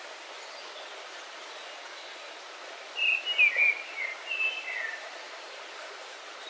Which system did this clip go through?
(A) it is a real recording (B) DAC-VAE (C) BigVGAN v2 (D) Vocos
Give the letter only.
A